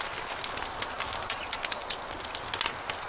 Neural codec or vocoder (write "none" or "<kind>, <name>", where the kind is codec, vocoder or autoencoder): none